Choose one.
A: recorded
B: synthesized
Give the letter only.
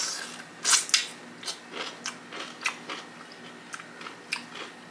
A